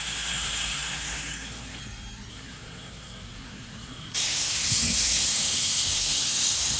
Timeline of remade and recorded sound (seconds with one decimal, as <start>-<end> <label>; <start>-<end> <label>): 0.0-1.8 remade; 1.8-2.3 recorded; 2.3-6.8 remade